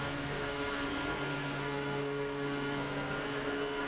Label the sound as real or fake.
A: fake